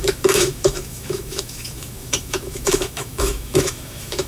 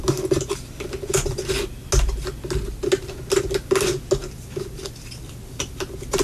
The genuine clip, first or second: second